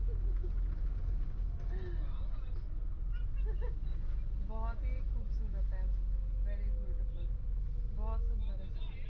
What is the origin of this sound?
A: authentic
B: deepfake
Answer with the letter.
A